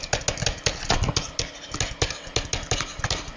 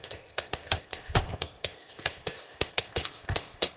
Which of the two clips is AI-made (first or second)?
second